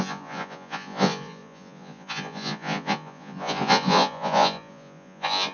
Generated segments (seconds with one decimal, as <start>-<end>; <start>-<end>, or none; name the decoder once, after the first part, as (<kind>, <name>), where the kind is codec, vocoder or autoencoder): 0.0-5.5 (vocoder, Vocos)